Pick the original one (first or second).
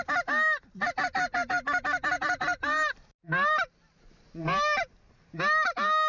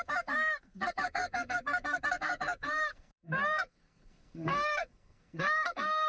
first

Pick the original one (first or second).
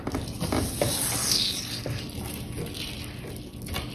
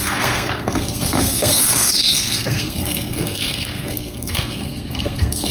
first